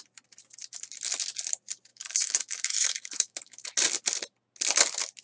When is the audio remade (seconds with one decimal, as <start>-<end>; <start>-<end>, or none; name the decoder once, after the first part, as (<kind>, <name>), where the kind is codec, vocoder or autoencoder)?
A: 1.9-3.7 (autoencoder, DAC-VAE)